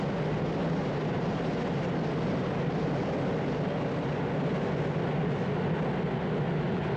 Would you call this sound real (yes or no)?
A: yes